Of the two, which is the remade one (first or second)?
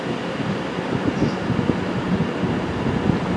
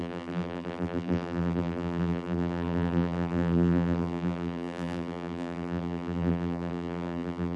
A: second